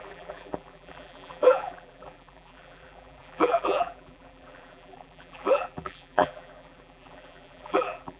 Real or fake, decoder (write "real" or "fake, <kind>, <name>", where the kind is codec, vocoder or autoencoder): fake, vocoder, BigVGAN v2